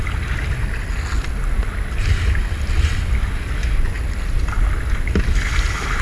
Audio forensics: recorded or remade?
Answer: recorded